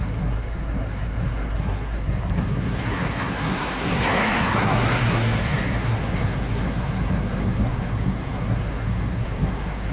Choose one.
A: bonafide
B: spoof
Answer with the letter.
B